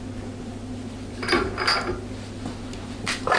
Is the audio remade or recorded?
recorded